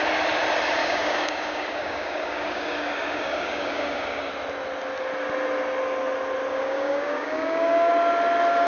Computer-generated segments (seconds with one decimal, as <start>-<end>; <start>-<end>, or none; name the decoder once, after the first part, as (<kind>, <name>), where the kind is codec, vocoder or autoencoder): 0.8-4.3 (codec, DAC); 6.5-7.9